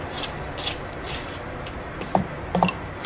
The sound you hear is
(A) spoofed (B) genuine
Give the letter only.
A